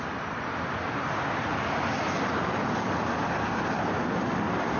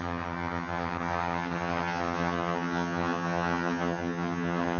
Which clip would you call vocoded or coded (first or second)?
second